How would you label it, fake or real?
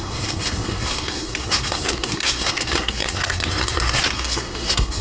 fake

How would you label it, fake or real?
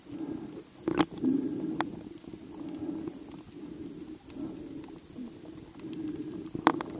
real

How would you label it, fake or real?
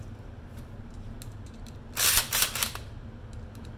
real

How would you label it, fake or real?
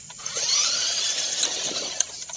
real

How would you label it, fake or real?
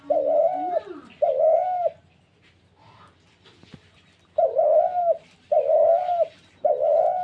real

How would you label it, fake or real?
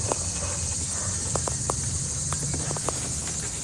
real